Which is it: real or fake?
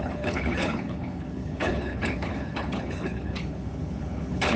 fake